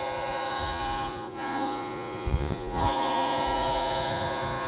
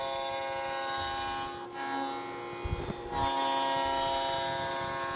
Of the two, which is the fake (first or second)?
first